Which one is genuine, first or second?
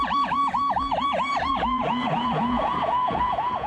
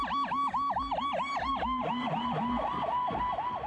second